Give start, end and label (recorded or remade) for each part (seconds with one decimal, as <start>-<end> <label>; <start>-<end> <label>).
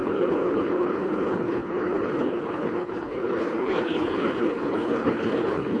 0.0-5.8 remade